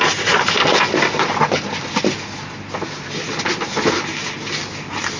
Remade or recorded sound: recorded